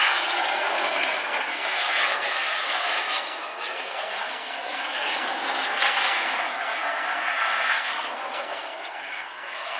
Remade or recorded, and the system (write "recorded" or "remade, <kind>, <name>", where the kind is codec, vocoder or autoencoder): remade, codec, SNAC